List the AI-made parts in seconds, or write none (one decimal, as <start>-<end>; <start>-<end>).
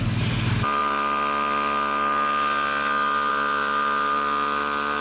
none